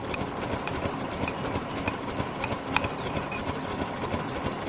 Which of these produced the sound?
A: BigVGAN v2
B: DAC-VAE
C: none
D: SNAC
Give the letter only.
A